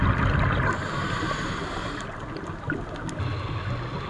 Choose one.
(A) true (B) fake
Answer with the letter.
A